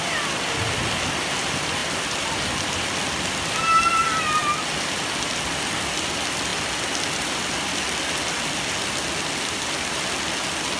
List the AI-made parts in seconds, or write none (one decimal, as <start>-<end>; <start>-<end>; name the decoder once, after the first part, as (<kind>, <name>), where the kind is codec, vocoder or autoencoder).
none